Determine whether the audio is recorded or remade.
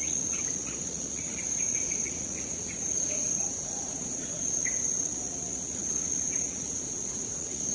remade